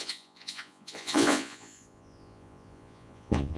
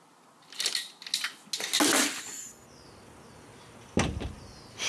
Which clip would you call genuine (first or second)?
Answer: second